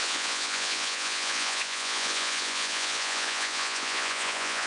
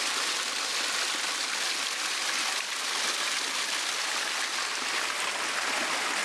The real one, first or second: second